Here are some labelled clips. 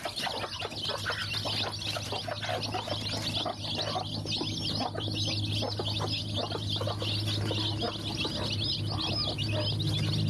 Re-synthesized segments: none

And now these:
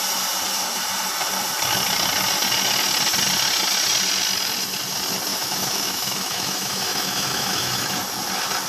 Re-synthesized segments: 5.3-8.0 (autoencoder, DAC-VAE)

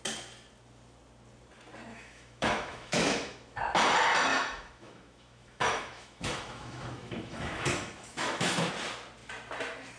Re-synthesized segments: 1.9-3.6 (autoencoder, DAC-VAE); 4.3-8.7

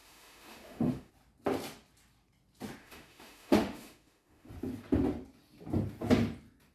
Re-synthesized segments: 0.0-1.1 (autoencoder, DAC-VAE); 2.8-4.5

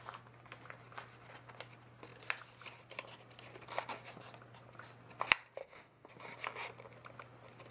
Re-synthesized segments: 5.6-6.1 (autoencoder, DAC-VAE)

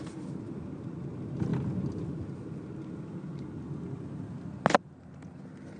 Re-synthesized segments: none